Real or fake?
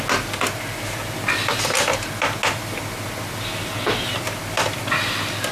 real